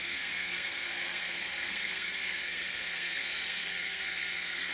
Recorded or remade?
remade